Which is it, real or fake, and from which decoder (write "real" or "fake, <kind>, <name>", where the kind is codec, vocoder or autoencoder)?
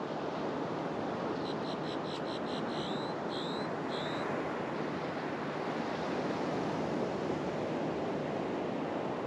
real